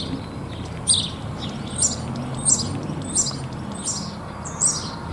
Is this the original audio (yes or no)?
yes